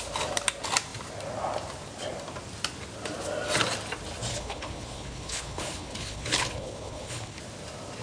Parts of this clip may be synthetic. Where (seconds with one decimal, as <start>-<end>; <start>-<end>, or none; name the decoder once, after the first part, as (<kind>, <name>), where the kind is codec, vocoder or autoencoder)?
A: 4.3-7.4 (codec, HILCodec)